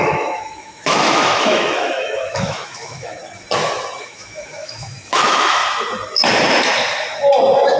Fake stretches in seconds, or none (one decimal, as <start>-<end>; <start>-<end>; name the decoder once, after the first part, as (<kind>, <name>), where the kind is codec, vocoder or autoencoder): 0.0-3.2 (autoencoder, DAC-VAE); 4.0-5.6